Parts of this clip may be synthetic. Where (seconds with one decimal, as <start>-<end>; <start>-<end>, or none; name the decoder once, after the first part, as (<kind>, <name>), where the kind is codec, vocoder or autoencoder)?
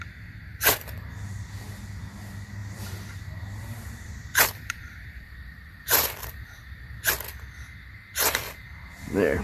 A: 0.5-1.3 (vocoder, BigVGAN v2); 2.6-7.1